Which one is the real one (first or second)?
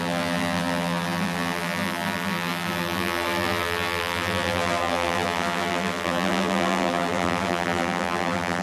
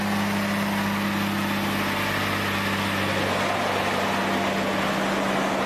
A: second